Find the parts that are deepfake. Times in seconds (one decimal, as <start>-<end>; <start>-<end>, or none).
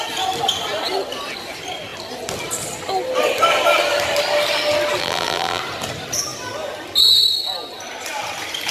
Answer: 5.0-5.6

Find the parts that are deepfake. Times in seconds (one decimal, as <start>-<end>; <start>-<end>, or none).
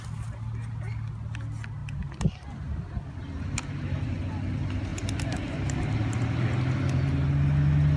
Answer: none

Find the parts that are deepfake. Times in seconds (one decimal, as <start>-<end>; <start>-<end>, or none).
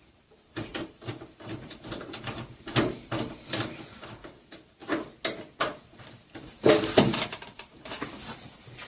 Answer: 0.0-4.8; 5.6-8.9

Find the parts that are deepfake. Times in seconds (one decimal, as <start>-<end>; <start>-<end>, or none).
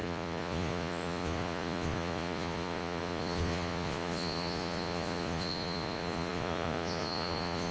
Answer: 0.0-7.7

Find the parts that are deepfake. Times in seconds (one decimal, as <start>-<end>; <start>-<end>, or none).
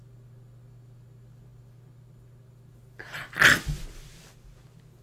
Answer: none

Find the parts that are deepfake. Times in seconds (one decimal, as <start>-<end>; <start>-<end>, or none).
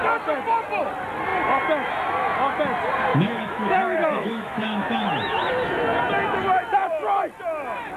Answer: 3.1-5.5